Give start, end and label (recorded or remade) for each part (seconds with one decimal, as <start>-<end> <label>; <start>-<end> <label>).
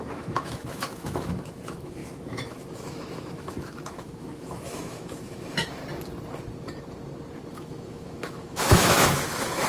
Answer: 0.0-5.8 remade; 5.8-7.5 recorded; 7.5-9.7 remade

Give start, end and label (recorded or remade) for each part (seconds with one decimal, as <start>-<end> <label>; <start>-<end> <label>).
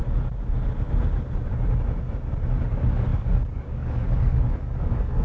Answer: 0.0-2.7 recorded; 2.7-5.2 remade